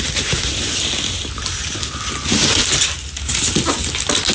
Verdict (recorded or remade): recorded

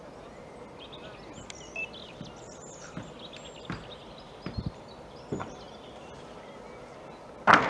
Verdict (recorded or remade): recorded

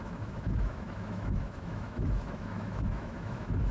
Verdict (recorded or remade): remade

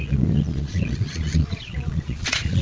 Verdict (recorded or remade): remade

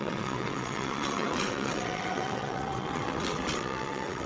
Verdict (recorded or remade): remade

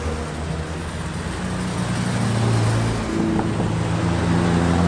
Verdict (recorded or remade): recorded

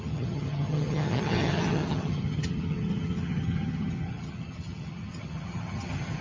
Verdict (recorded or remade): remade